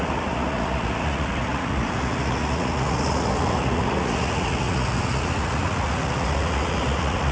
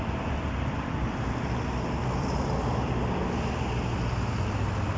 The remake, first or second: first